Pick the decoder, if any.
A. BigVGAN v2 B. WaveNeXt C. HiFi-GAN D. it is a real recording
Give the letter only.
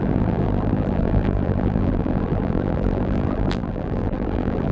A